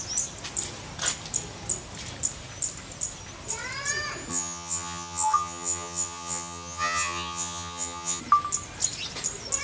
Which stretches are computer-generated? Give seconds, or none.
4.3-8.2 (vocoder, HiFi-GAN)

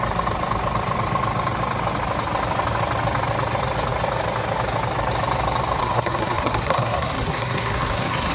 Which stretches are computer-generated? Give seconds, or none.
5.8-8.3 (codec, SNAC)

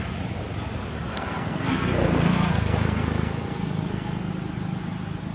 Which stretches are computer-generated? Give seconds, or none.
1.1-4.3 (codec, SNAC)

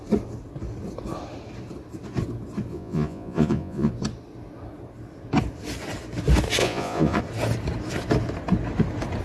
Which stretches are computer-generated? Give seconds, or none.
2.7-3.9 (vocoder, Vocos); 6.6-7.2

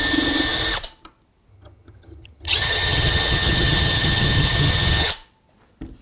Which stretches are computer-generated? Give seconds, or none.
1.5-5.1 (vocoder, HiFi-GAN)

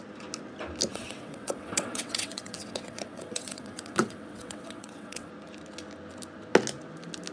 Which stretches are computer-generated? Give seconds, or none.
0.9-5.3 (vocoder, WaveNeXt)